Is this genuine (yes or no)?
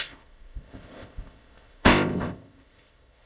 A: no